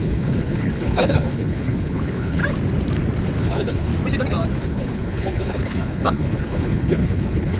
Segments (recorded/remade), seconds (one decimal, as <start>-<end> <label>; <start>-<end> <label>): 0.0-2.4 remade; 2.4-3.4 recorded; 3.4-3.9 remade; 3.9-4.5 recorded; 4.5-7.6 remade